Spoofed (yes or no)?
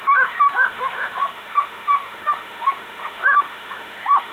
yes